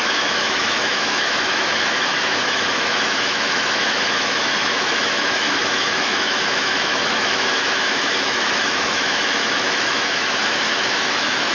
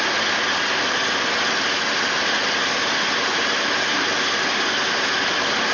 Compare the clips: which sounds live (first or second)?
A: second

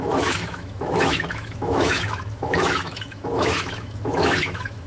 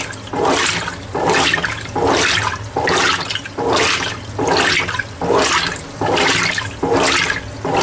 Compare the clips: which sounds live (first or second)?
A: second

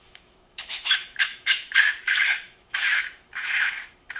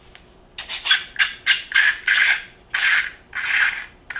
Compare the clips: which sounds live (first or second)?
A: second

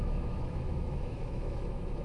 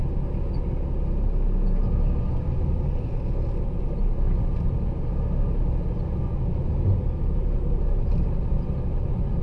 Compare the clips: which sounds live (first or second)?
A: second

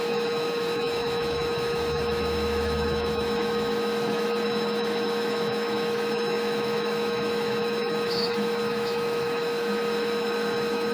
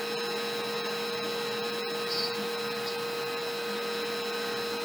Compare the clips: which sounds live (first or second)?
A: second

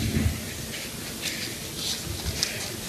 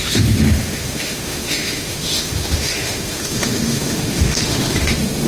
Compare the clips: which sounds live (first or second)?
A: first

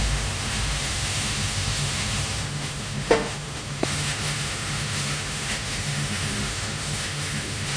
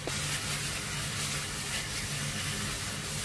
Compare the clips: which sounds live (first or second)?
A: second